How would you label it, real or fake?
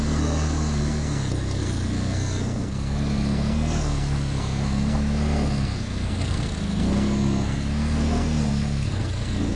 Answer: fake